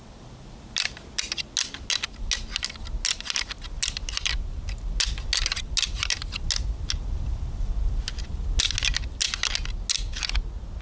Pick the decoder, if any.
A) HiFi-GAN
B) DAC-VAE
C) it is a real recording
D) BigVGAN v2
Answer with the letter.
C